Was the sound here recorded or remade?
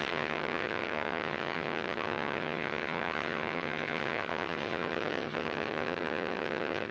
remade